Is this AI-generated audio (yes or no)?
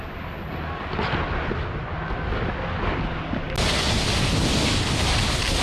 no